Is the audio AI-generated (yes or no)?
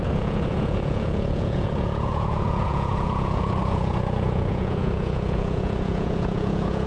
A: yes